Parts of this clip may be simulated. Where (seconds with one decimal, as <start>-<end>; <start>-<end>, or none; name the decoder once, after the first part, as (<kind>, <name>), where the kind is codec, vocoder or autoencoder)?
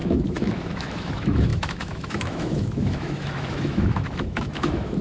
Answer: 0.0-5.0 (autoencoder, DAC-VAE)